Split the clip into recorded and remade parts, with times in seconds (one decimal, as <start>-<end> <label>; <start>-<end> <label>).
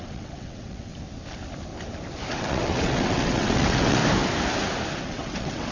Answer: 0.0-0.9 remade; 0.9-2.3 recorded; 2.3-4.0 remade; 4.0-5.0 recorded; 5.0-5.7 remade